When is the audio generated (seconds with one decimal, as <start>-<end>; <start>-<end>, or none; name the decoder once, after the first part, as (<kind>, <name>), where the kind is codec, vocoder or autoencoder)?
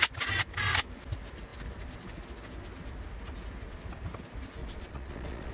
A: 4.6-5.5 (vocoder, Vocos)